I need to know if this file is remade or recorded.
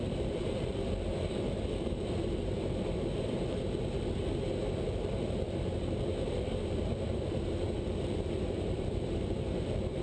remade